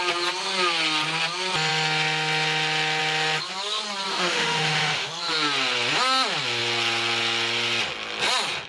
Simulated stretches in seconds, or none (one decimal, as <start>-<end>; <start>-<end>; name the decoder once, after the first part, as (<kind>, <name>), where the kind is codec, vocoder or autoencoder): 4.1-5.1 (autoencoder, DAC-VAE)

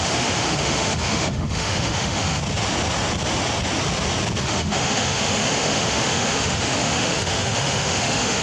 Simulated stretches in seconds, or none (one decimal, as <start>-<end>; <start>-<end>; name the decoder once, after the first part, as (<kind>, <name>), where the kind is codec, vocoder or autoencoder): 0.0-2.4 (autoencoder, DAC-VAE); 4.4-8.4

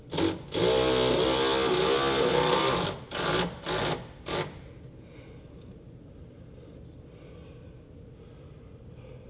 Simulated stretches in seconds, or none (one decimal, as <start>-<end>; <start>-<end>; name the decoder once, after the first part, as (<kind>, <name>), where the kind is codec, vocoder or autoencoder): none